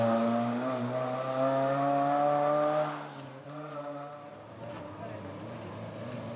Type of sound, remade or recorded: recorded